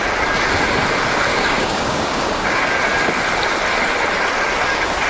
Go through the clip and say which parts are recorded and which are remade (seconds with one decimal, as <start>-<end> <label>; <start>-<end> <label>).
0.0-1.3 recorded; 1.3-2.6 remade; 2.6-5.1 recorded